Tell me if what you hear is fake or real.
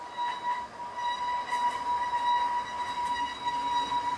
real